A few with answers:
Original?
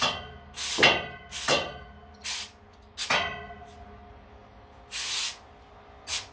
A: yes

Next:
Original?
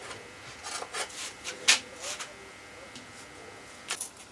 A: yes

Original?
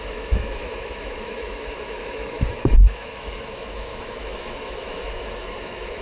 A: no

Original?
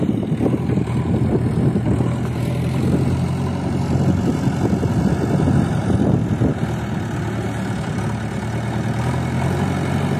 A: yes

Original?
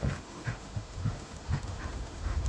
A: no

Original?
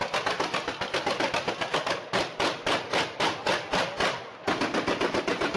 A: yes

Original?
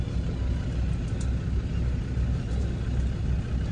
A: yes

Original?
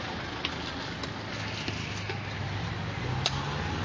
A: yes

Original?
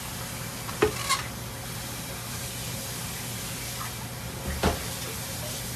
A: yes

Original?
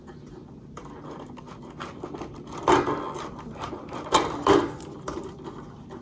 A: yes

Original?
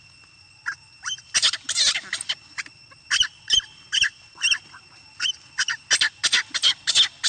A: yes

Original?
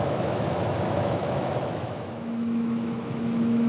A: no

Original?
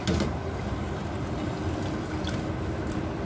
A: yes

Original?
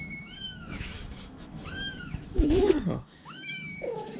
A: no